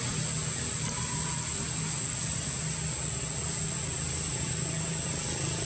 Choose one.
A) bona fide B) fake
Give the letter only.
A